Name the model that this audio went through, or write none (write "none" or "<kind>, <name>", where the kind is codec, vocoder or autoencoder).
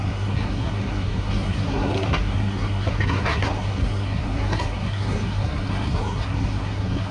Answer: codec, SNAC